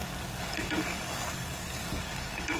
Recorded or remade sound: remade